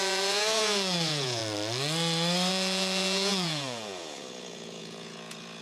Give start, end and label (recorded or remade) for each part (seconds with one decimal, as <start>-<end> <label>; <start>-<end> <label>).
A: 0.0-1.4 remade; 1.4-2.5 recorded; 2.5-5.6 remade